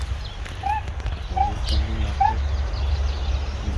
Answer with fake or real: real